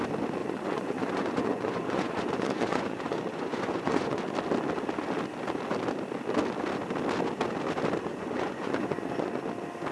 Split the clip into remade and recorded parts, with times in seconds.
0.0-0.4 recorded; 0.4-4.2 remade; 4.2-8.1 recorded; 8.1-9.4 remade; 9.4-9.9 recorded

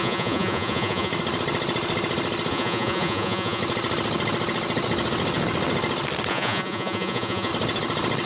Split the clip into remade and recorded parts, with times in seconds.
0.0-1.1 remade; 1.1-2.5 recorded; 2.5-3.6 remade; 3.6-6.3 recorded; 6.3-7.5 remade; 7.5-8.3 recorded

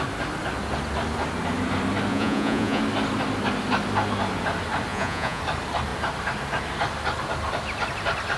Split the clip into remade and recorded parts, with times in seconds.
0.0-2.1 recorded; 2.1-2.8 remade; 2.8-4.9 recorded; 4.9-5.4 remade; 5.4-8.4 recorded